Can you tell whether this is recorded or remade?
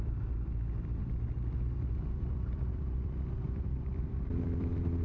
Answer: remade